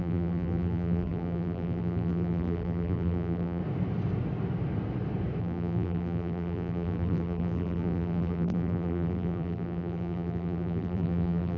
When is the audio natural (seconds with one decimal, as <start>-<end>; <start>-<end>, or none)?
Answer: 3.6-5.4